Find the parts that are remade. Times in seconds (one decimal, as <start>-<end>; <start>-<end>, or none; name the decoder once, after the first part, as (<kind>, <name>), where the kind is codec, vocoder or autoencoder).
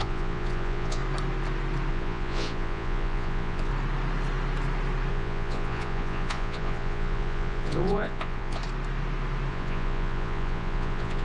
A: 0.0-1.0 (vocoder, Vocos); 1.9-3.7; 5.1-8.6; 9.5-11.2